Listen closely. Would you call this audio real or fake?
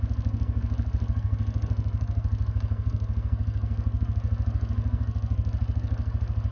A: fake